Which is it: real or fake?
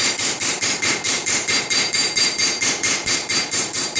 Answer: fake